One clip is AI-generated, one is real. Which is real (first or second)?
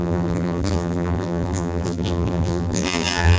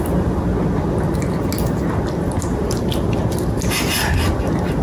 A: second